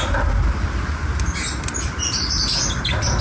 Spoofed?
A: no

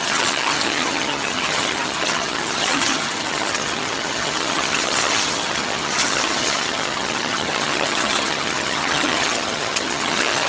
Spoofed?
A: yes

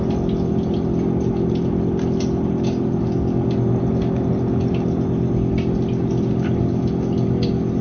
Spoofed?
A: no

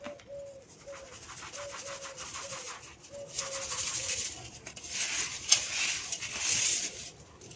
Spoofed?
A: no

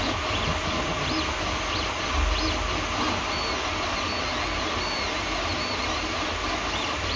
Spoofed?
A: no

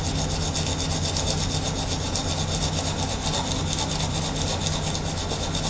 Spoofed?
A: no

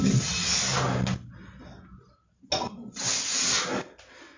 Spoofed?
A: no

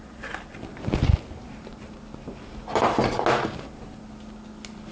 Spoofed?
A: no